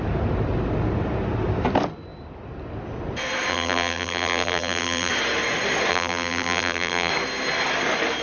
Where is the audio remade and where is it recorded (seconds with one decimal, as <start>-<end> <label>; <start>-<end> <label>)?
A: 0.0-3.5 recorded; 3.5-5.1 remade; 5.1-5.9 recorded; 5.9-7.1 remade; 7.1-8.2 recorded